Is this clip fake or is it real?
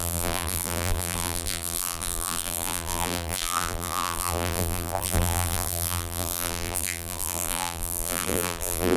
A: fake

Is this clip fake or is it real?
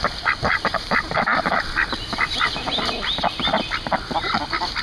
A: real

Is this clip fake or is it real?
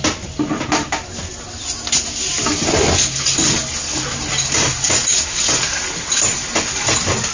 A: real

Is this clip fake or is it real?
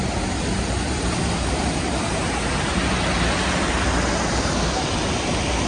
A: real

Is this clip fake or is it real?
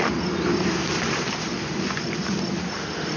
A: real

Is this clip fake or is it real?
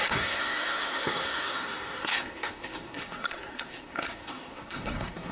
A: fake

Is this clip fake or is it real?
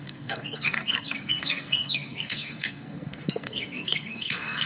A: fake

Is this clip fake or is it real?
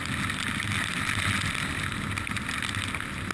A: real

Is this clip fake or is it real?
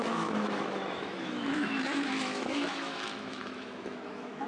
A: fake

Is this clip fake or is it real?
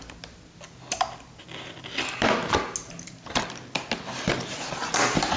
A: real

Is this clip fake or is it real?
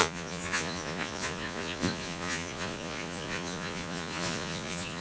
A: fake